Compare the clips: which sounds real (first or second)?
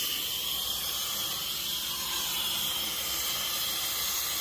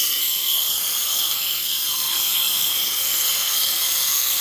first